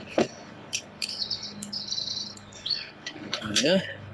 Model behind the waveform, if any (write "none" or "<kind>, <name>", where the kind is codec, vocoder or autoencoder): codec, HILCodec